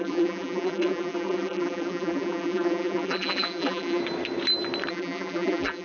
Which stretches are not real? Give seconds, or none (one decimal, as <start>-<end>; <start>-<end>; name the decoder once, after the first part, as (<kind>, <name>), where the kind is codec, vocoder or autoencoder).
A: 0.0-4.0 (vocoder, BigVGAN v2); 4.9-5.8